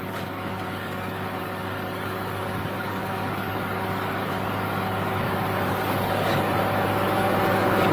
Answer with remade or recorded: remade